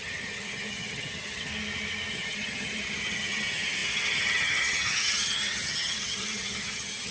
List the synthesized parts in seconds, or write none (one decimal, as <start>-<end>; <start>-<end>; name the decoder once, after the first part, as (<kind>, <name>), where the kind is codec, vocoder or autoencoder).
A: 0.0-1.5 (vocoder, HiFi-GAN); 2.1-7.1